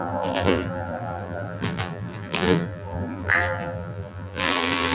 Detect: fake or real fake